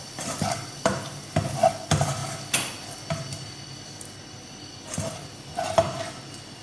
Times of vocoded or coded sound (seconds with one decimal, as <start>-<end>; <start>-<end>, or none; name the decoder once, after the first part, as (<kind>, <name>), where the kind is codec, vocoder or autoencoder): 0.0-2.2 (vocoder, BigVGAN v2)